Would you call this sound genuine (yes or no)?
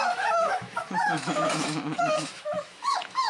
no